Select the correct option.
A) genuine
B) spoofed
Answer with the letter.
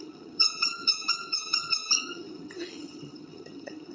B